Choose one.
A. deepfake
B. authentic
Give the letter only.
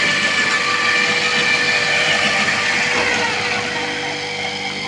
B